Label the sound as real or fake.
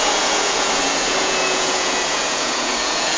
fake